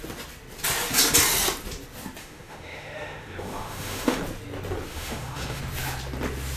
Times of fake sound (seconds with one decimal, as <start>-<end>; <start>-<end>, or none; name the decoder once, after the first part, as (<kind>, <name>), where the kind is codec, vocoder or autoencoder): 2.2-4.2 (autoencoder, DAC-VAE); 4.9-5.6